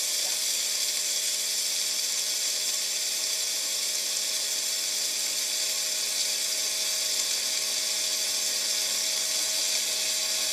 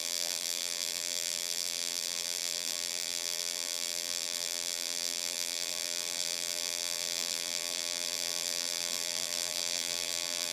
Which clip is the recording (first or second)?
first